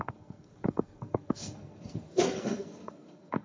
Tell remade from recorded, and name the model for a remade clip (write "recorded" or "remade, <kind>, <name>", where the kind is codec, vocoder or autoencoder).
remade, codec, SNAC